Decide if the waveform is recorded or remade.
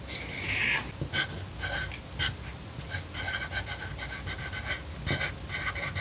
recorded